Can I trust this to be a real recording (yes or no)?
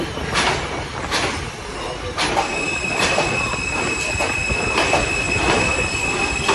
yes